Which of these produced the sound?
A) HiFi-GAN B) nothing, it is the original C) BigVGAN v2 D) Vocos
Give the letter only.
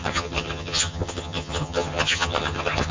A